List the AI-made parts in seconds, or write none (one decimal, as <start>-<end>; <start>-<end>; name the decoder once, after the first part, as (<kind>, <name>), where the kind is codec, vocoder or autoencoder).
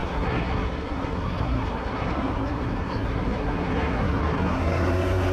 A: 0.0-5.3 (codec, SNAC)